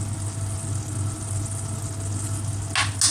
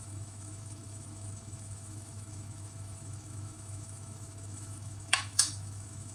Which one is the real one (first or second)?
first